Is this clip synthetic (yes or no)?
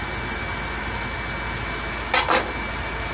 no